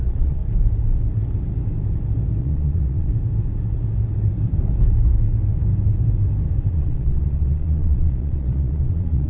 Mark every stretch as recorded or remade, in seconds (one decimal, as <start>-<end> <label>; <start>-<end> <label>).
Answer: 0.0-0.4 remade; 0.4-2.4 recorded; 2.4-3.1 remade; 3.1-6.7 recorded; 6.7-9.3 remade